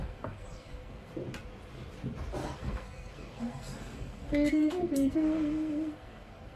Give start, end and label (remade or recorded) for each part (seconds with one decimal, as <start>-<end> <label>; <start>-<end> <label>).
0.0-1.1 remade; 1.1-2.4 recorded; 2.4-6.6 remade